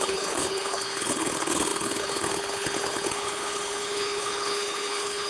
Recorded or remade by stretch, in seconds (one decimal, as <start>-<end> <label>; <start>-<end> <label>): 0.0-5.3 remade